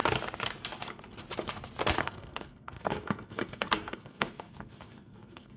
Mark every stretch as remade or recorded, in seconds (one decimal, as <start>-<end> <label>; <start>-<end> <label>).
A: 0.0-2.0 recorded; 2.0-5.6 remade